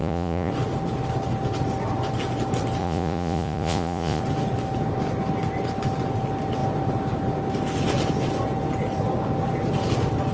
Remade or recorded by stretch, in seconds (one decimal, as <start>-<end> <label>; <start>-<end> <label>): 0.0-0.5 remade; 0.5-2.8 recorded; 2.8-4.2 remade; 4.2-10.3 recorded